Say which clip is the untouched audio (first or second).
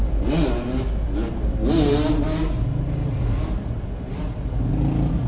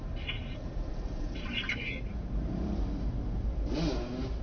first